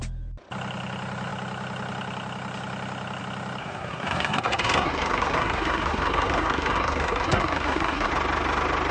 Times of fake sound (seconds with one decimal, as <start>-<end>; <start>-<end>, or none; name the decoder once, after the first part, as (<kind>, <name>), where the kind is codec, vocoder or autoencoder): 3.6-8.1 (codec, SNAC)

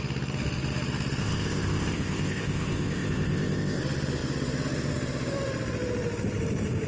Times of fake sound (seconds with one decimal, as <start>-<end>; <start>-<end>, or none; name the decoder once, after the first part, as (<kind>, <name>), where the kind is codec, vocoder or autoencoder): 1.2-3.8 (codec, ZipCodec)

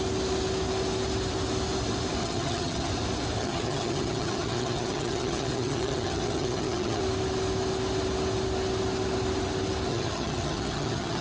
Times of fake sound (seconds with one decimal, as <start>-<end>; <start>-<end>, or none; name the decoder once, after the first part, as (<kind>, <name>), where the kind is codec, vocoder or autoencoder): 2.2-2.9 (vocoder, HiFi-GAN); 3.4-7.0; 9.9-11.2

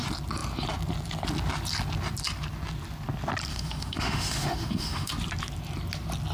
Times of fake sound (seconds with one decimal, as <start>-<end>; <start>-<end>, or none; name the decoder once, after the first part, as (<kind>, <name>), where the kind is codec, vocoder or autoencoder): 3.5-5.1 (autoencoder, DAC-VAE)

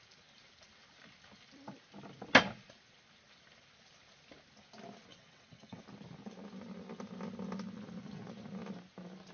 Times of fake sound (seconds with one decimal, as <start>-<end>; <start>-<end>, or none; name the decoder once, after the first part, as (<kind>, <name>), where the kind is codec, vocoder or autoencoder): 5.1-5.8 (vocoder, WaveNeXt)

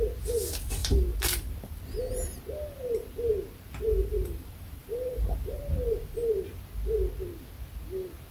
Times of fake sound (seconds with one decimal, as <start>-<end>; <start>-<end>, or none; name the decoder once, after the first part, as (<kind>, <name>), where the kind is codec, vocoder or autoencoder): 0.8-1.8 (vocoder, BigVGAN v2); 3.9-5.6

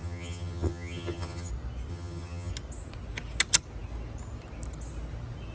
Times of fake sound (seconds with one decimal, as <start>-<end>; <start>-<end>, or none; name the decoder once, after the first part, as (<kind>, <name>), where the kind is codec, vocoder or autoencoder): 0.0-1.5 (vocoder, HiFi-GAN); 1.9-2.5

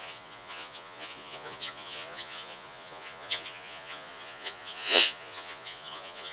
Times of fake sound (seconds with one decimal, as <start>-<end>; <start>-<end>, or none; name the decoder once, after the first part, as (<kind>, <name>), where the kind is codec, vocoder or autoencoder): 0.0-6.3 (vocoder, Vocos)